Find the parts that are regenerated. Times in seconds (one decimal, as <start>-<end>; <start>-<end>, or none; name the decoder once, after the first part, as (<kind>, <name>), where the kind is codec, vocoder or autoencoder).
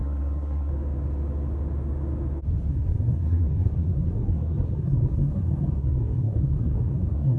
0.0-0.7 (codec, SNAC); 2.7-7.4